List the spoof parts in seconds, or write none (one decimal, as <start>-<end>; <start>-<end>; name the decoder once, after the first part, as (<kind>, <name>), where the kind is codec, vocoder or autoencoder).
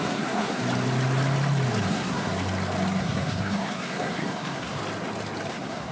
0.0-0.6 (codec, SNAC); 1.9-2.3; 3.0-4.8; 5.5-5.9